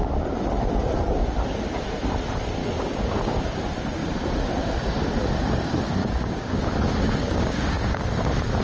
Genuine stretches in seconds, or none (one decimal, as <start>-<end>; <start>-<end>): 0.0-2.6; 3.4-6.0; 6.6-7.2; 8.0-8.6